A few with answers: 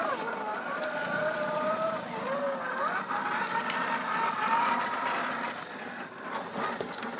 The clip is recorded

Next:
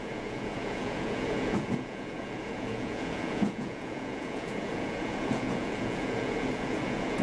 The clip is remade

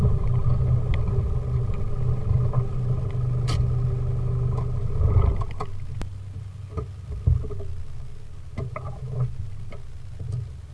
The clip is recorded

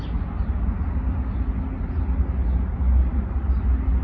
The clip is recorded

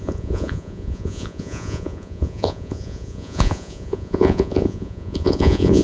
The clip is remade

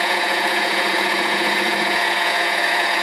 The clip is remade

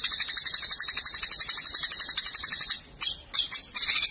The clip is recorded